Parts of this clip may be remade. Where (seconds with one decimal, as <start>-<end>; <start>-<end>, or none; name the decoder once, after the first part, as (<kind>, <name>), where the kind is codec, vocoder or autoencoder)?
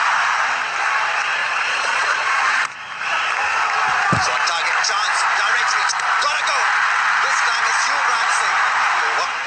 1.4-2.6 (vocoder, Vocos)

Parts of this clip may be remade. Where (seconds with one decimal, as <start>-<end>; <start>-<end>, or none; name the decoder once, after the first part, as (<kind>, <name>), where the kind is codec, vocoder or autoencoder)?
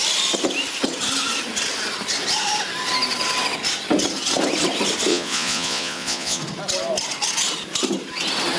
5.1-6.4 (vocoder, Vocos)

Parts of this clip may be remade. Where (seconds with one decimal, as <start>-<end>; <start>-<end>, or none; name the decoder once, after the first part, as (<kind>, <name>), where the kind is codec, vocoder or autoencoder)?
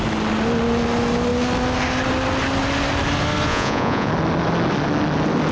3.5-4.1 (vocoder, Vocos)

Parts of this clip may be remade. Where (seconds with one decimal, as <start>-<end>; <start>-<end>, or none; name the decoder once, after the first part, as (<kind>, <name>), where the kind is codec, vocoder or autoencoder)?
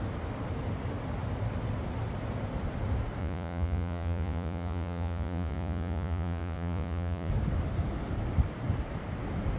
3.2-7.3 (vocoder, Vocos)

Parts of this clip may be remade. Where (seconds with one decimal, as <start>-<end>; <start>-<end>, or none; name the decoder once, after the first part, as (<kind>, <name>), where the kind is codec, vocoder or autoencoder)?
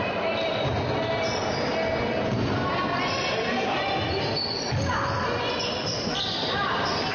none